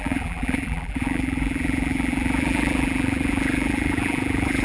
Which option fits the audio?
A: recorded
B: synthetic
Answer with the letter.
B